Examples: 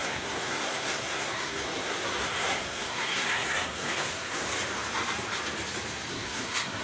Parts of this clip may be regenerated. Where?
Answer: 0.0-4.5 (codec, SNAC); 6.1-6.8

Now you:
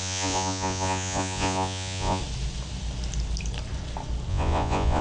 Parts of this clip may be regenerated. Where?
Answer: 0.0-2.2 (vocoder, Vocos); 4.3-5.0

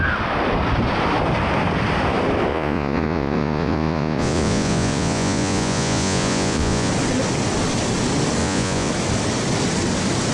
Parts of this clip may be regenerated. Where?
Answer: 2.5-6.9 (vocoder, Vocos); 8.4-8.9

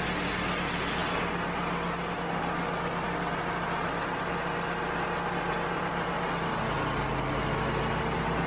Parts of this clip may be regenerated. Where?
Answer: none

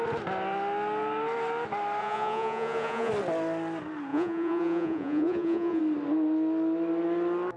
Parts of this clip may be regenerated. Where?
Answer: 2.0-3.1 (vocoder, Vocos); 4.1-5.8

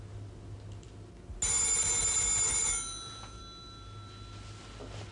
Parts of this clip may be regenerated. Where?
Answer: 2.6-3.4 (vocoder, Vocos)

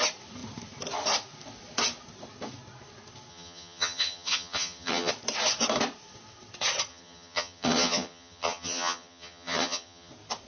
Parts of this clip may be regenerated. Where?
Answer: 3.3-5.1 (vocoder, HiFi-GAN); 6.9-10.1